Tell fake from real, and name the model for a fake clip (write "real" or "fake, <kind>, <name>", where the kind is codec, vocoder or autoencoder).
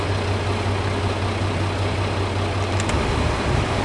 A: real